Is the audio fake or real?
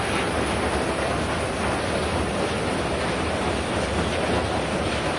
real